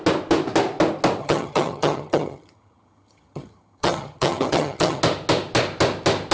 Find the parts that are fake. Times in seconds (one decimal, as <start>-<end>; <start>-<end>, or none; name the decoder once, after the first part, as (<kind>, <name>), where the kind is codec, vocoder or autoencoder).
1.2-5.0 (vocoder, HiFi-GAN)